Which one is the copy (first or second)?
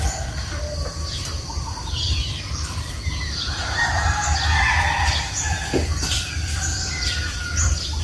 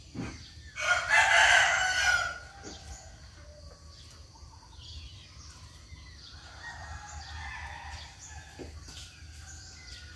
first